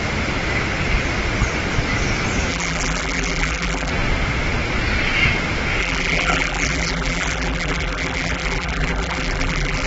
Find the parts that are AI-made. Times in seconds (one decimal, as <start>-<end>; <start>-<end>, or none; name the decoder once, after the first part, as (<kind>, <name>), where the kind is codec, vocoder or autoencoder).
2.5-3.9 (vocoder, BigVGAN v2); 5.8-9.9